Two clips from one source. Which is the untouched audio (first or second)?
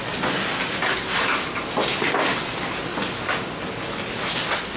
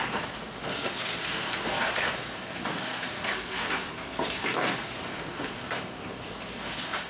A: first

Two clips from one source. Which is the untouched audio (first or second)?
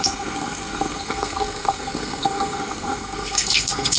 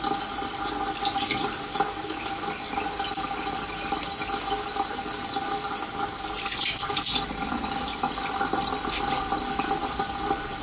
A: second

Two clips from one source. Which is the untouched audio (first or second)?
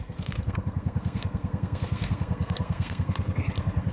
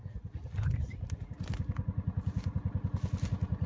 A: second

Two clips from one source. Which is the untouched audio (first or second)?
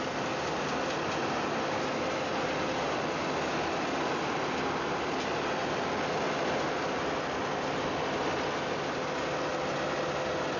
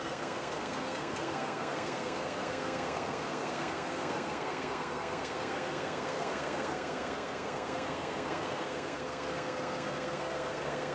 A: first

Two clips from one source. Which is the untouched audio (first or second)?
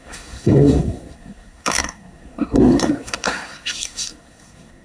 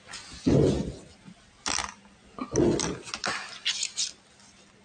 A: second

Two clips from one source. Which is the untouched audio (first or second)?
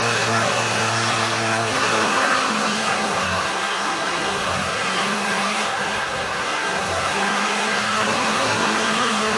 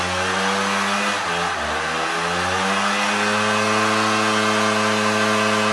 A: second